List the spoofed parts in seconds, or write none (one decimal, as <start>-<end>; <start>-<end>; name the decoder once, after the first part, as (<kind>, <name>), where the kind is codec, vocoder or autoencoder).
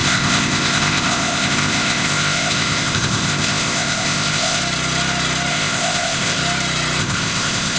0.0-4.6 (codec, ZipCodec); 5.5-6.4; 7.0-7.8